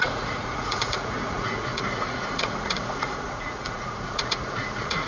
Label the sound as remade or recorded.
remade